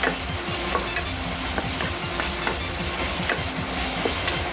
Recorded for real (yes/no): yes